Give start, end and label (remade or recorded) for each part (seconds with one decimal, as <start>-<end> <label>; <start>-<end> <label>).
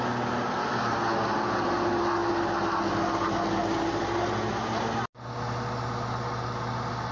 0.0-7.1 recorded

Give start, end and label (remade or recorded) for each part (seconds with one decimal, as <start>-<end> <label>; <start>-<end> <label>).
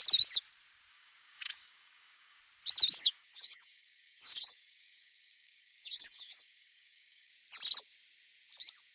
0.0-0.9 recorded; 0.9-2.4 remade; 2.4-3.0 recorded; 3.0-7.3 remade; 7.3-8.9 recorded